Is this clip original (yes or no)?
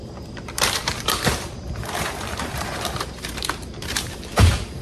no